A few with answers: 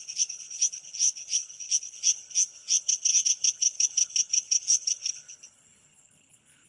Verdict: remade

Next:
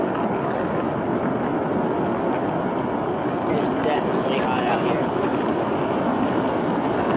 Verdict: recorded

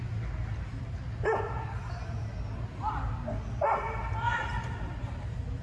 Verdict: recorded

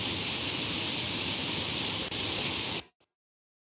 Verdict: recorded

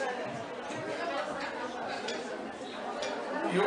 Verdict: recorded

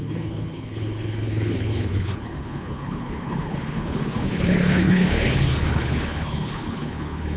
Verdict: remade